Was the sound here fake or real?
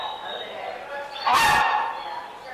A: real